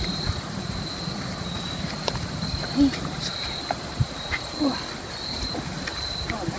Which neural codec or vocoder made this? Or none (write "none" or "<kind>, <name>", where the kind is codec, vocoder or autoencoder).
none